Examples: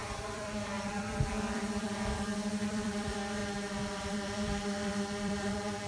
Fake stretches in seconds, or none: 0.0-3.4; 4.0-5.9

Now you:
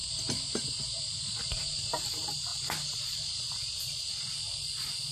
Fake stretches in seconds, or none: 2.5-4.1

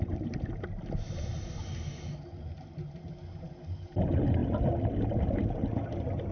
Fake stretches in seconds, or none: none

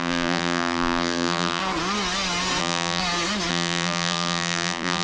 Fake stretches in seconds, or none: 0.0-1.6; 2.6-3.0; 3.5-5.0

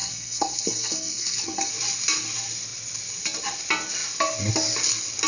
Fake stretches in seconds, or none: 0.0-1.7

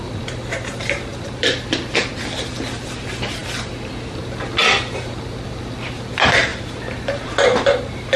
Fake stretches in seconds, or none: 1.1-2.1; 6.5-7.2

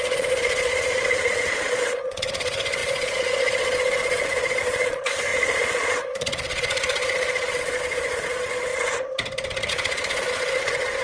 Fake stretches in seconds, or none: 0.0-8.7; 9.7-11.0